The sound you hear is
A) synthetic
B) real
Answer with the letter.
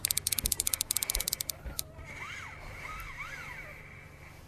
B